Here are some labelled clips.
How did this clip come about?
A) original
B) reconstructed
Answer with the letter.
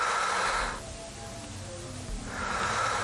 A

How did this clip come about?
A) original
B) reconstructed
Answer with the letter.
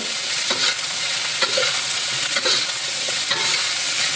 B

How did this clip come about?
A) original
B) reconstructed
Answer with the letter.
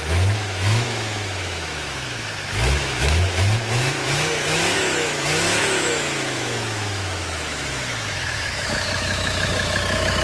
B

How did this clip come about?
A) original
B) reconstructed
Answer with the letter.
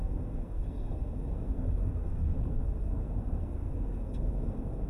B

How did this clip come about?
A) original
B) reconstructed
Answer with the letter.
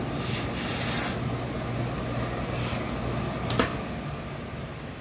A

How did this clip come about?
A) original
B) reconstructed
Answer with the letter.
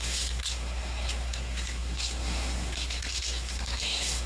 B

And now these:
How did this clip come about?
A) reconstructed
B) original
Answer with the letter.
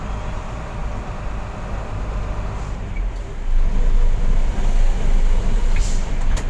B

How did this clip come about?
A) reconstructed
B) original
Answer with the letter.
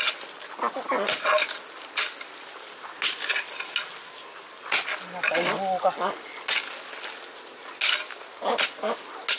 B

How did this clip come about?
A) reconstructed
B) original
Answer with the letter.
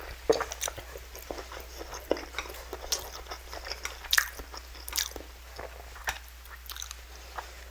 B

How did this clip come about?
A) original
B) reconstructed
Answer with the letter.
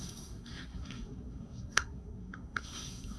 B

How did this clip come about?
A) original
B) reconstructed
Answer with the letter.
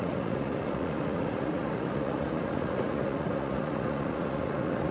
B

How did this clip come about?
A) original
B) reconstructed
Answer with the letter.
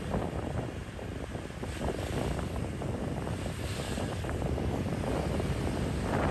A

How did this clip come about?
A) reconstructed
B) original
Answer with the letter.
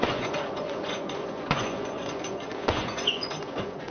A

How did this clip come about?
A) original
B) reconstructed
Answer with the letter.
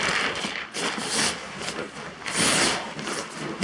A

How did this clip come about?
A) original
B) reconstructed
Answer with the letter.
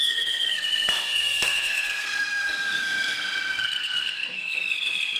B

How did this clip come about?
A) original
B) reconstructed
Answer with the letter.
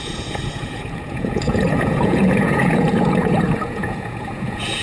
B